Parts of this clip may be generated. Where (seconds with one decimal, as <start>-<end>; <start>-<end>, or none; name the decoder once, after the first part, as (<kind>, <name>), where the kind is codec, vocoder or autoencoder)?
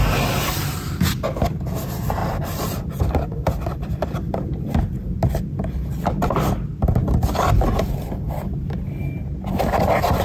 2.2-3.1 (vocoder, BigVGAN v2)